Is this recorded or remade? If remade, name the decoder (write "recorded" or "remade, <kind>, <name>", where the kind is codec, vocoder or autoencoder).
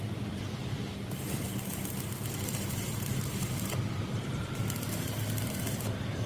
remade, vocoder, BigVGAN v2